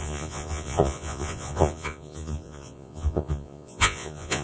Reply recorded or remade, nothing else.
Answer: remade